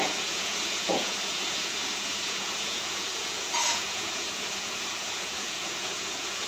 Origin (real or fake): fake